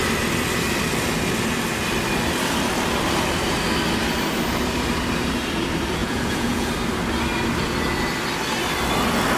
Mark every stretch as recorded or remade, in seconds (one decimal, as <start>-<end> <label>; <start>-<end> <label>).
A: 0.0-6.0 recorded; 6.0-6.7 remade; 6.7-9.4 recorded